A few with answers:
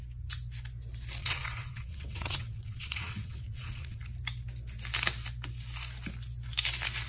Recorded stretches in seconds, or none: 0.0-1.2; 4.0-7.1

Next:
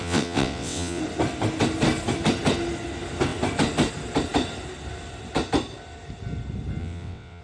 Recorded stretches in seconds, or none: 1.0-6.8

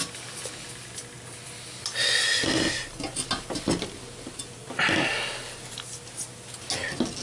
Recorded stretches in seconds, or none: 0.0-7.2

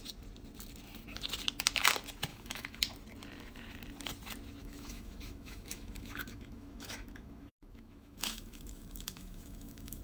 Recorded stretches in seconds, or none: 0.0-2.3; 2.8-4.6

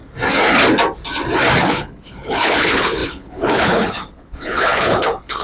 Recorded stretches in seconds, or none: 0.0-1.6

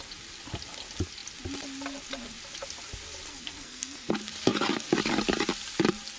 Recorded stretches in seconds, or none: 0.0-3.3; 4.1-6.2